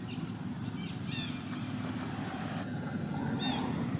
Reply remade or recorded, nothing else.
recorded